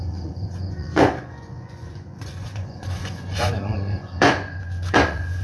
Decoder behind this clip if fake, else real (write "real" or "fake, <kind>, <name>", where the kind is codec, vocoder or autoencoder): fake, vocoder, Vocos